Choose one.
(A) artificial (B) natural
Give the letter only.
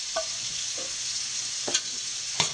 A